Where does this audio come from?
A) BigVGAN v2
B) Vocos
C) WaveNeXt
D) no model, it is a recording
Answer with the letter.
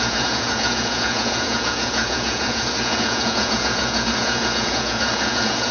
B